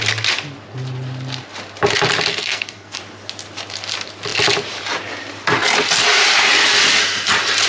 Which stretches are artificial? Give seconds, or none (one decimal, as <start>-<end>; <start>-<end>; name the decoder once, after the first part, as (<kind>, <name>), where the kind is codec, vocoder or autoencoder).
2.3-3.0 (codec, SNAC)